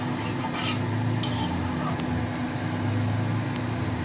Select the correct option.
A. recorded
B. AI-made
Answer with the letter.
A